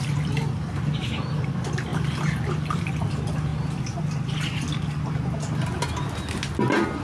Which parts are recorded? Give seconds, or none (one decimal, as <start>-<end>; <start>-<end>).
0.0-7.0